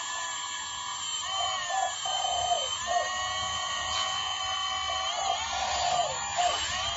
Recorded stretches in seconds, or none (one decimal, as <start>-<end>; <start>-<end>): 0.0-3.5; 4.4-7.0